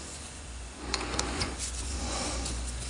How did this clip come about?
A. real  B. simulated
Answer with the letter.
B